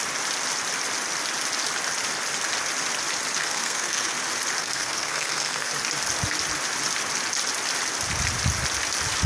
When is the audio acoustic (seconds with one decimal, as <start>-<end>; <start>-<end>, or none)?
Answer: 0.0-3.4; 4.1-4.6; 5.7-9.3